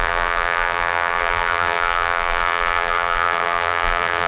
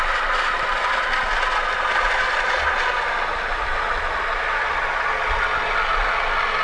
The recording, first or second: second